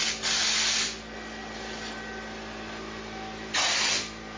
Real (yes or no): yes